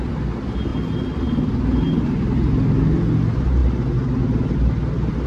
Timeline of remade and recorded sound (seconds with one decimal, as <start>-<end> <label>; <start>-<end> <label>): 0.0-5.3 recorded